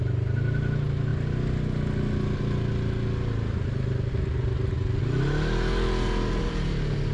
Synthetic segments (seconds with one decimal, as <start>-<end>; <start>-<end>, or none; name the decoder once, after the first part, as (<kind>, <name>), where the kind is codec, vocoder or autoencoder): none